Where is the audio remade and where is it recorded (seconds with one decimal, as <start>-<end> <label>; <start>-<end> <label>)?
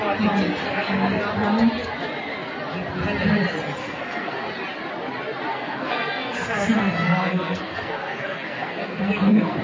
0.0-0.6 recorded; 0.6-1.2 remade; 1.2-3.8 recorded; 3.8-4.4 remade; 4.4-5.5 recorded; 5.5-9.6 remade